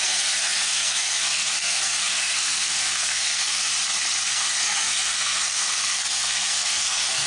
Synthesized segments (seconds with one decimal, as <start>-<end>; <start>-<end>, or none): 0.0-3.7; 4.3-7.3